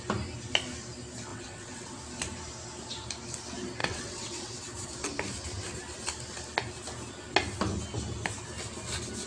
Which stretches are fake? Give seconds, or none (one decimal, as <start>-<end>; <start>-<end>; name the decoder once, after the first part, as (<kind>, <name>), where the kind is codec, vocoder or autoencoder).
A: 1.3-2.0 (vocoder, WaveNeXt); 3.8-4.6